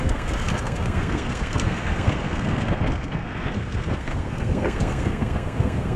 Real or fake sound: fake